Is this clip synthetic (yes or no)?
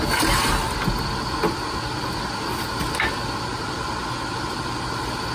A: no